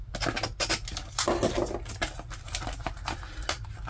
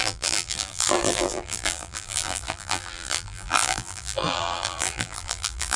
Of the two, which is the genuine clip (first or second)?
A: first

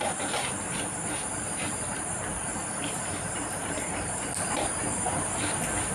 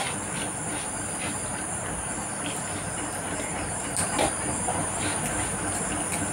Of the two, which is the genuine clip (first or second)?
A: second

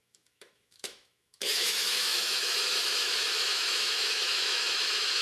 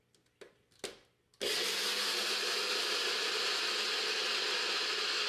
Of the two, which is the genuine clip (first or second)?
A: second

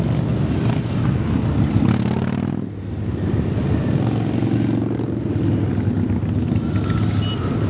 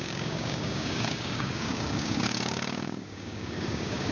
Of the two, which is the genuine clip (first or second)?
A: first